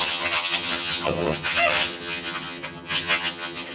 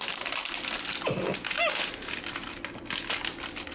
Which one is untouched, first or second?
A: second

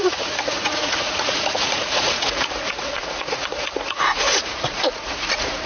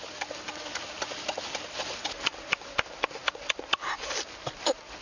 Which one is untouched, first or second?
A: second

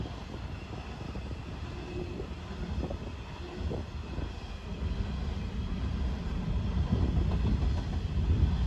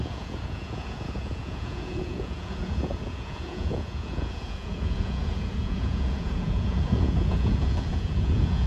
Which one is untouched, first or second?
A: first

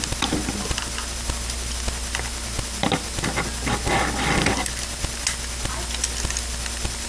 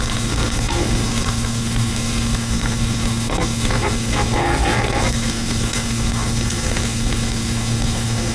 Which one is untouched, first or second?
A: first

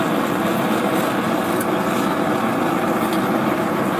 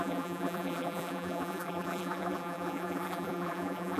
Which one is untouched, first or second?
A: first